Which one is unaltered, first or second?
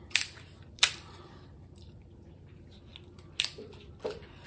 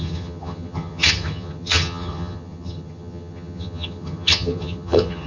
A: first